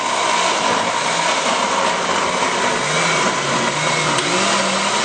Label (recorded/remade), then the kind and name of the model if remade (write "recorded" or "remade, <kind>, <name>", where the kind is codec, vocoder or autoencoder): recorded